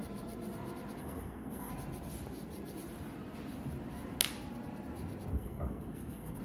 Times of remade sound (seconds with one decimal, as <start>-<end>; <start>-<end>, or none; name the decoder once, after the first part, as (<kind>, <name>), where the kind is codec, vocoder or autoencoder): 1.0-1.7 (codec, SNAC); 5.3-6.4